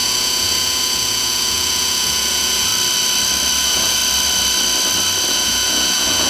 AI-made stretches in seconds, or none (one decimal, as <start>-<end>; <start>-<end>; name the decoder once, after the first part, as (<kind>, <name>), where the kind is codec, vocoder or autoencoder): 0.0-2.7 (vocoder, Vocos); 3.6-4.0; 5.3-6.3